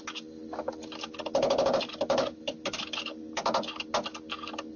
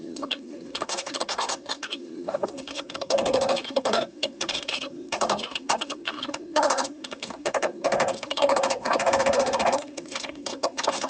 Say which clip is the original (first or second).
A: first